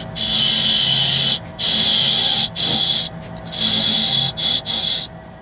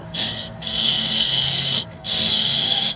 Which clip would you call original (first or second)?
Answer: first